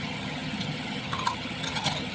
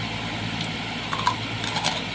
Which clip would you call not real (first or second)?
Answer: first